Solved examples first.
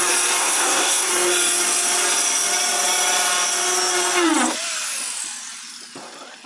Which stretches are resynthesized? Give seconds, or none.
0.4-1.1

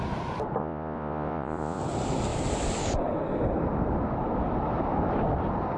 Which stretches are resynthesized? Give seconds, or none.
0.6-1.8

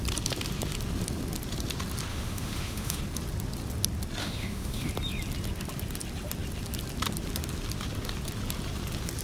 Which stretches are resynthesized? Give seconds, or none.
2.1-3.0; 4.2-4.9

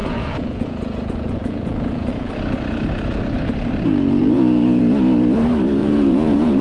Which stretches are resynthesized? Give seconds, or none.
0.0-2.3; 4.2-4.8; 5.8-6.6